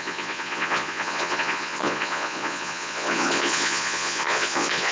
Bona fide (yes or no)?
no